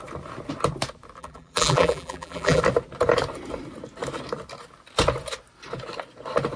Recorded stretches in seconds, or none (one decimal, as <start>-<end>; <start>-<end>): 0.0-1.2; 2.6-6.6

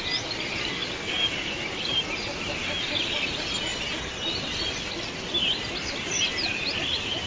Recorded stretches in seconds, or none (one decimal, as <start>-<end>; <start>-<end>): 0.0-7.3

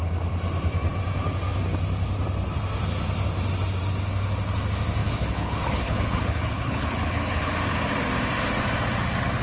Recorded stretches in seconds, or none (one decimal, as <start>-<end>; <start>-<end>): 0.0-5.0; 7.5-9.4

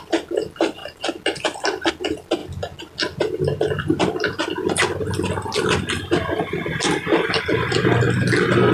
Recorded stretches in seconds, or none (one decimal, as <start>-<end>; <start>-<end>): 0.0-8.7

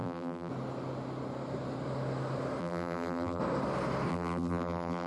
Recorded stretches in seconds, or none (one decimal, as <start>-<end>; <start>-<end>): 0.5-2.6; 3.4-4.1

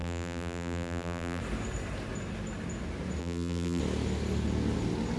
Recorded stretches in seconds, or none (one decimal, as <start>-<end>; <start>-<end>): 1.4-3.2; 3.8-5.2

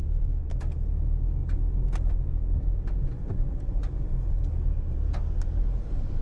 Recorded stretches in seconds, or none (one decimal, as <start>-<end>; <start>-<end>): 0.0-6.2

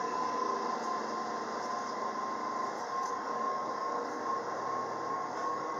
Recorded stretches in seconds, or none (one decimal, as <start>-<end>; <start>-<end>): 0.5-2.8; 4.2-5.1